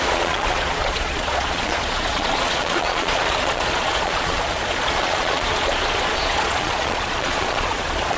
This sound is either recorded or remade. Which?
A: remade